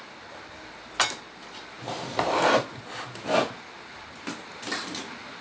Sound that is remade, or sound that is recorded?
recorded